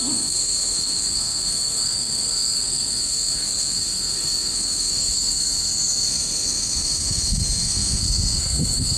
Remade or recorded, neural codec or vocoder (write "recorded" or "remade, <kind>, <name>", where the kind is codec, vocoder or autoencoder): remade, codec, SNAC